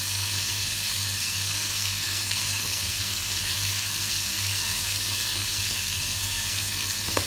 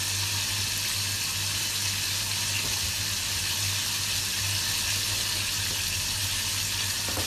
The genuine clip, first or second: second